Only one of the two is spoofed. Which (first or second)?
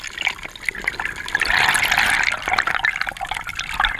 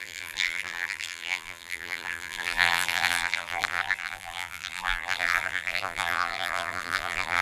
second